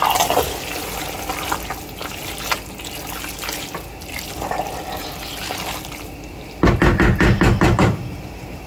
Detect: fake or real real